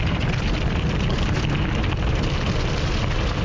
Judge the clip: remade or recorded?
recorded